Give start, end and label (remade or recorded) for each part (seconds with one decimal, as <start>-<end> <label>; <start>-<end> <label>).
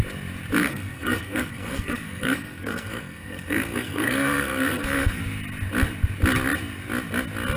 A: 0.0-0.6 recorded; 0.6-5.2 remade; 5.2-7.6 recorded